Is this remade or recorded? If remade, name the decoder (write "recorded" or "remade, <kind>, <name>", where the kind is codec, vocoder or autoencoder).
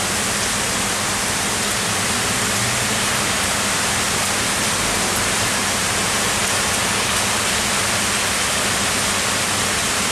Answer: recorded